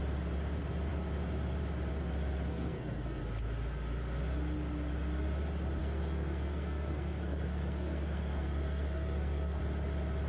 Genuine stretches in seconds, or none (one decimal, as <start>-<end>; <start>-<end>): 0.0-2.5; 3.2-5.8; 9.6-10.3

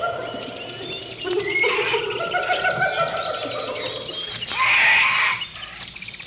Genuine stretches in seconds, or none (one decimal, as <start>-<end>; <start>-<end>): 0.0-6.3

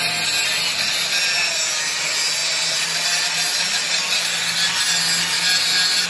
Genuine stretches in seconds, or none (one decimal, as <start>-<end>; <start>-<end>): 0.0-6.1

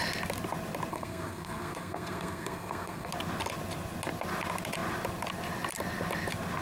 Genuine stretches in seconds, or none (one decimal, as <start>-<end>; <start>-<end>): 0.0-0.9; 3.1-6.6

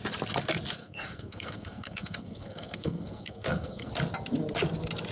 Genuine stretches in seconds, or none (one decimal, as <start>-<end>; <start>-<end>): 0.0-0.8; 3.9-5.1

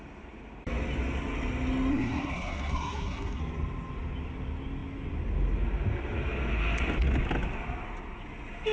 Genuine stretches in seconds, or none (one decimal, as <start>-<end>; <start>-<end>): 0.0-1.9; 3.4-8.7

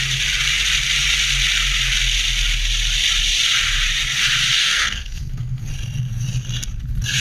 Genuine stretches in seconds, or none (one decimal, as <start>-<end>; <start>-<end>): 0.0-4.6; 5.7-7.2

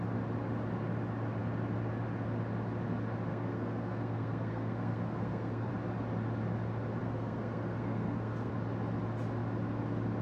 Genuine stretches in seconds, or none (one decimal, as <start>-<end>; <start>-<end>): 0.0-3.3; 5.7-7.0; 8.5-10.2